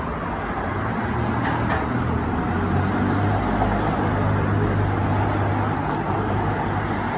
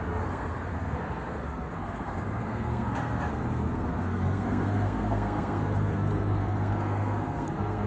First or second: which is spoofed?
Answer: second